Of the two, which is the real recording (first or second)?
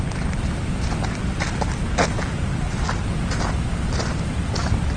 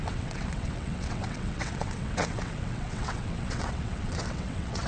first